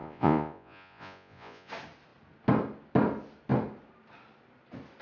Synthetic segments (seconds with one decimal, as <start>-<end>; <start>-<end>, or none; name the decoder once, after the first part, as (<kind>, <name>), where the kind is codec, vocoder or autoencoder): 0.0-1.7 (vocoder, Vocos)